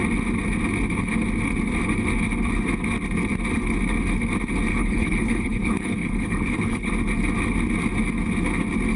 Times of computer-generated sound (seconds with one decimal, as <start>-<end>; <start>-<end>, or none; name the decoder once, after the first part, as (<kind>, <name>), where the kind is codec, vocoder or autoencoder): 4.7-6.9 (codec, HILCodec)

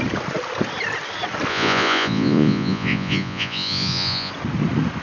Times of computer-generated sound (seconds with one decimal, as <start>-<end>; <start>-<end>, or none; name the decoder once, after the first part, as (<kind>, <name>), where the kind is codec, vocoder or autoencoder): 1.5-4.3 (vocoder, Vocos)

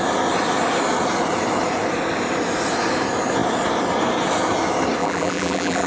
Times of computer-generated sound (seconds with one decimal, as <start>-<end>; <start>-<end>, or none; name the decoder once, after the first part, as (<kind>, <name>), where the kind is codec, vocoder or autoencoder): 5.0-5.9 (vocoder, BigVGAN v2)